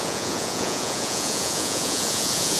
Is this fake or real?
fake